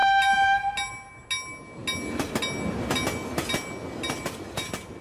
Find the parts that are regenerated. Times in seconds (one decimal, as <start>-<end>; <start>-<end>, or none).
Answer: none